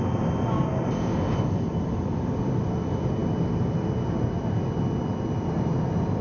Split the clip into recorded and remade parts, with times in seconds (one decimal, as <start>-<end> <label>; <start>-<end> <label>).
0.0-6.2 recorded